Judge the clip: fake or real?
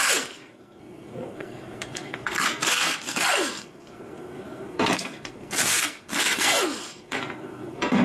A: fake